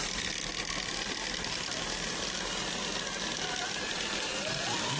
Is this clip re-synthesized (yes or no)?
yes